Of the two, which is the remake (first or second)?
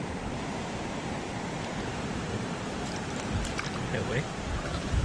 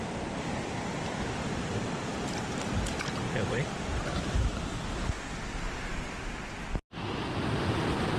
first